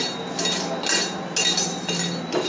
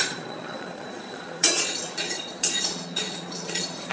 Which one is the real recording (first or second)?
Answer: first